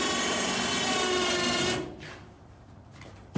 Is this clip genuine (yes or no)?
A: yes